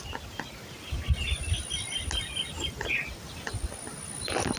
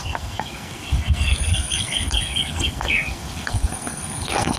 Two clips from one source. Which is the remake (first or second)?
second